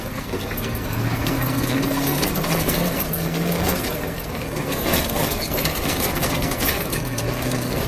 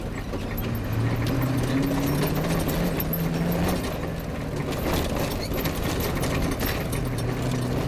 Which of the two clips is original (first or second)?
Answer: second